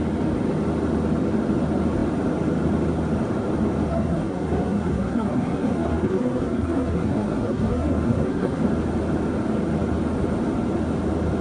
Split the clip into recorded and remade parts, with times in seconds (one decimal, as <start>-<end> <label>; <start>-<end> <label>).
0.0-3.9 recorded; 3.9-8.6 remade; 8.6-11.4 recorded